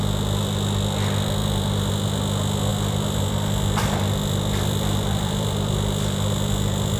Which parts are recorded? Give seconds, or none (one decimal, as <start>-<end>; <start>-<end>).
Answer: 0.0-1.4; 1.9-2.7